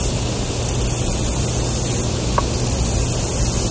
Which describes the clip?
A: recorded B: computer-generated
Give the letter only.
A